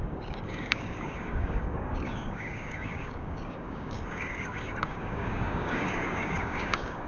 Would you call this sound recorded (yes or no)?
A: no